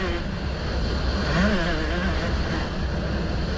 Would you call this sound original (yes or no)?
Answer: yes